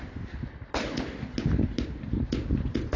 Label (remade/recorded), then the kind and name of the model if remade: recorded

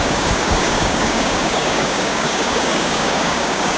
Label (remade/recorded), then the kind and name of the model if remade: remade, codec, DAC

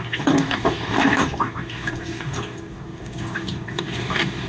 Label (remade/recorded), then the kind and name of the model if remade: remade, codec, DAC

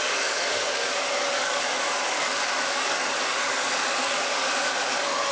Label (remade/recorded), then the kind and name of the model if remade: remade, codec, DAC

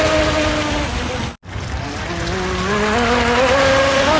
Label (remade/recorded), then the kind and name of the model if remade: recorded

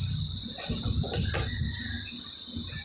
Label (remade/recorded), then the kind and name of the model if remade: recorded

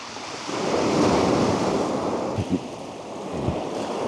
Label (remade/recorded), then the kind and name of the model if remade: recorded